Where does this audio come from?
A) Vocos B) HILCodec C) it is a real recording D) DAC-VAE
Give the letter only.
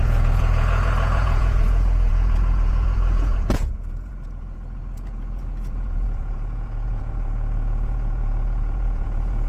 A